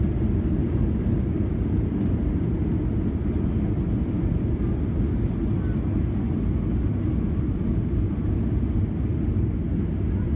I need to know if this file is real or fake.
real